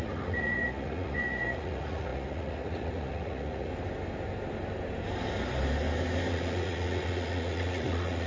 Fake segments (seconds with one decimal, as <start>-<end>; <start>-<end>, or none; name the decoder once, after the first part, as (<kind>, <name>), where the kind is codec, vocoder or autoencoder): 0.0-3.7 (vocoder, Vocos); 6.3-8.3